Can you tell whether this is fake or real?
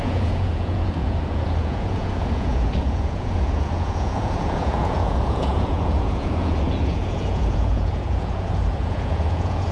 fake